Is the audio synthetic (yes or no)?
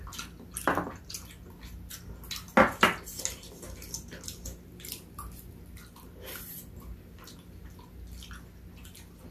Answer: no